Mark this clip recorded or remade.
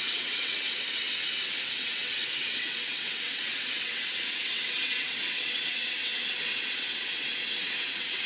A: remade